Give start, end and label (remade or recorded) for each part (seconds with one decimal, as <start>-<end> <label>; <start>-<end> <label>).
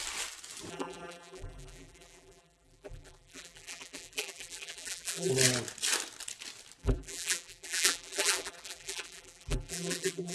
0.0-0.7 recorded; 0.7-5.3 remade; 5.3-6.8 recorded; 6.8-10.3 remade